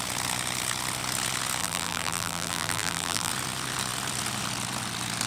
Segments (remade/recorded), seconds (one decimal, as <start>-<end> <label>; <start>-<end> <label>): 0.0-1.6 recorded; 1.6-3.3 remade; 3.3-5.3 recorded